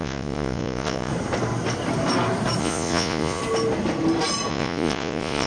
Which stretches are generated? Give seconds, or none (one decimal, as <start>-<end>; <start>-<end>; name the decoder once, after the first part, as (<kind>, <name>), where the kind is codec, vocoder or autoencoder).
0.0-1.1 (vocoder, Vocos); 2.6-3.4; 4.5-5.5